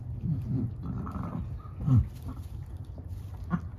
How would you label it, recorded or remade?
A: recorded